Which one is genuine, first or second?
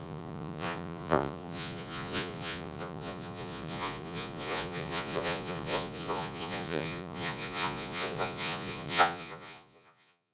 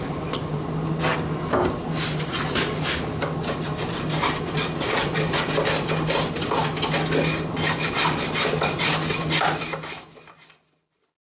second